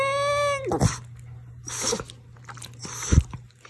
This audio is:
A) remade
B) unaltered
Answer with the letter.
B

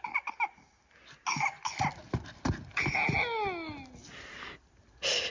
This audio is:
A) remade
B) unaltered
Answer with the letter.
B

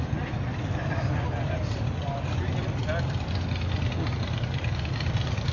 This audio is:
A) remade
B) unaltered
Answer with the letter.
B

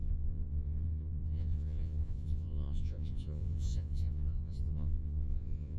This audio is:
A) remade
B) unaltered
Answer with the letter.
A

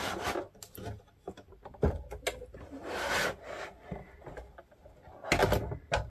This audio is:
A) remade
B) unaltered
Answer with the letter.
B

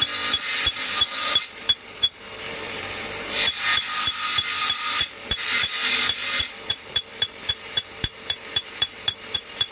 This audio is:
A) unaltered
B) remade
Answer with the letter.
B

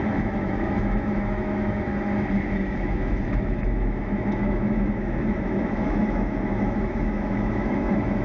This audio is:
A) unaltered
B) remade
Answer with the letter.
B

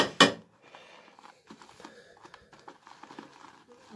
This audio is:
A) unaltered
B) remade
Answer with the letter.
A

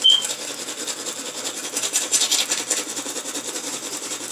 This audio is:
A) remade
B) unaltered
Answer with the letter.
B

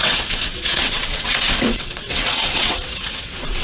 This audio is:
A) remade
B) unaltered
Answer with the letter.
A